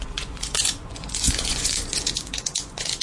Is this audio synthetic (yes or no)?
yes